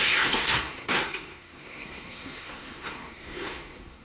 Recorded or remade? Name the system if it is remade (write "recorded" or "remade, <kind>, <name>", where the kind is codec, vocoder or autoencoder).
remade, codec, SNAC